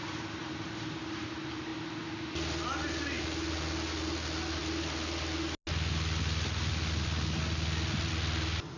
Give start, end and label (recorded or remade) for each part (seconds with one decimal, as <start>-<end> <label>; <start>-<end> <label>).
0.0-8.8 recorded

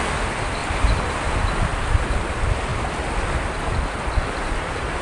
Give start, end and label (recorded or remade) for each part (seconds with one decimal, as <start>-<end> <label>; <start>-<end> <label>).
0.0-5.0 recorded

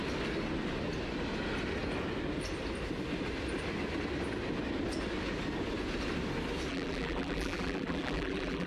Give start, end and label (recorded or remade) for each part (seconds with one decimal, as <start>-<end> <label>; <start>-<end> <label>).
0.0-6.7 recorded; 6.7-8.7 remade

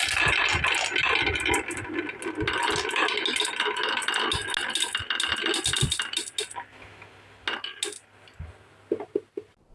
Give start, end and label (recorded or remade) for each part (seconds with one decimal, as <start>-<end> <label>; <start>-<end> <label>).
0.0-9.7 recorded

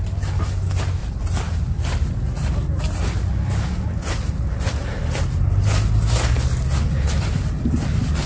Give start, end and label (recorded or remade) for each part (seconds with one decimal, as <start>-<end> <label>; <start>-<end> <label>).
0.0-1.0 recorded; 1.0-4.3 remade; 4.3-8.3 recorded